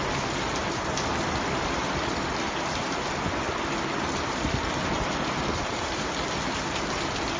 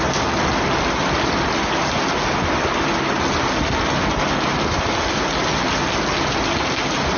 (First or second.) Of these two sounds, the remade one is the first